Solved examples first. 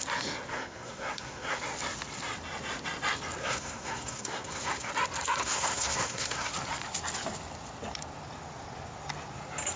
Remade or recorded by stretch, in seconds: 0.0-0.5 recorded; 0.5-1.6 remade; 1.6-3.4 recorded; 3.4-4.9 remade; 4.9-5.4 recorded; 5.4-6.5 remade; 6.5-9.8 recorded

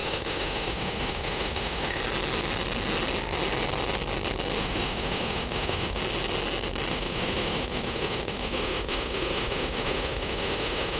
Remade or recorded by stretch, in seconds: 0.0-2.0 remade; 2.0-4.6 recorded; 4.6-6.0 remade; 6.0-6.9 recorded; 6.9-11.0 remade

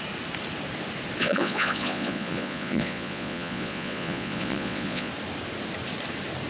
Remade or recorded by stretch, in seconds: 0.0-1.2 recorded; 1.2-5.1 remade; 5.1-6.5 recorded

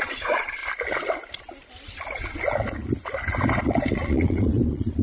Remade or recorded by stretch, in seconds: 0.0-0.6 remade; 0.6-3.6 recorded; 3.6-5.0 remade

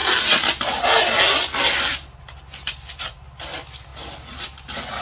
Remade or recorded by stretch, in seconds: 0.0-5.0 recorded

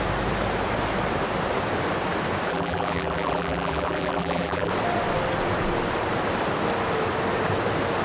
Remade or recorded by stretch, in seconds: 0.0-2.5 recorded; 2.5-4.7 remade; 4.7-8.0 recorded

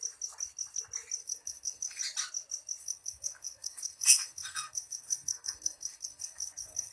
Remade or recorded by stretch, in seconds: 0.0-1.2 recorded; 1.2-2.0 remade; 2.0-2.8 recorded; 2.8-6.9 remade